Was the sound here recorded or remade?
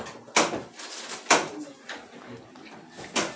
recorded